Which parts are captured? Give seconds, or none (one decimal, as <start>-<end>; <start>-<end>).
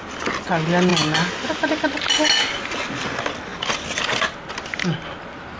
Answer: 0.0-5.6